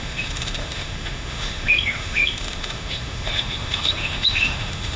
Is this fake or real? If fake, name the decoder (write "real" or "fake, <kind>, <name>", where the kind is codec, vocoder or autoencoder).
fake, autoencoder, DAC-VAE